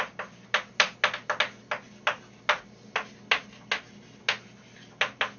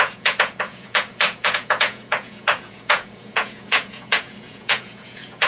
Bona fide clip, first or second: first